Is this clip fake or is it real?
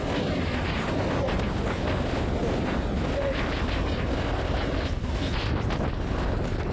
real